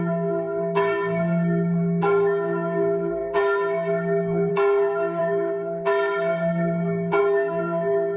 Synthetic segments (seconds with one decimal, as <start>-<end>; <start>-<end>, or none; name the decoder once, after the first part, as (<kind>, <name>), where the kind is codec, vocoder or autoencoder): 0.0-8.2 (codec, SNAC)